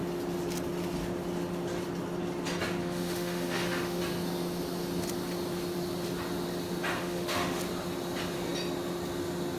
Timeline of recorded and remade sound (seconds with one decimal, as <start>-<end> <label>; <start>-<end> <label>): 0.0-2.8 recorded; 2.8-4.0 remade; 4.0-7.0 recorded; 7.0-7.6 remade; 7.6-9.6 recorded